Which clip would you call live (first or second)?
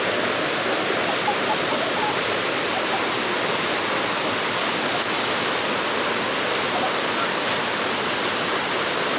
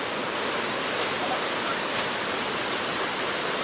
first